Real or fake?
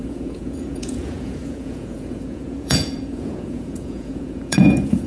fake